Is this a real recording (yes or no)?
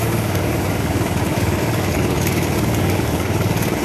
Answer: no